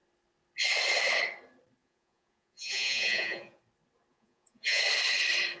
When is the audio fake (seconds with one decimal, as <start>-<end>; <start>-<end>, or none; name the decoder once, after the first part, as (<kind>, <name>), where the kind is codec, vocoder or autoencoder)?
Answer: 1.8-3.6 (vocoder, Vocos); 4.1-4.8